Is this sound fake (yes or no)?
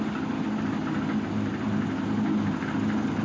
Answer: no